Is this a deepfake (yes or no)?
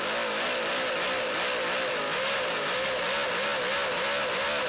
no